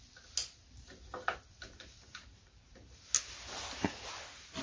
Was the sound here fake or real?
real